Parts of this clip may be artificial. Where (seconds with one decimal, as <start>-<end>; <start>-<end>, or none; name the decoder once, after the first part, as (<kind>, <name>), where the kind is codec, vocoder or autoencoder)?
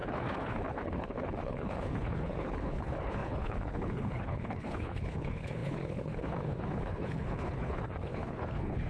0.0-8.9 (codec, HILCodec)